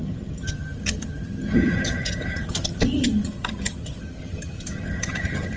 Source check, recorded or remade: remade